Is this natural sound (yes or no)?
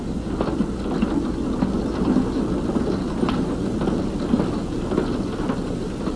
yes